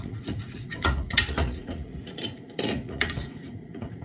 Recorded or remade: remade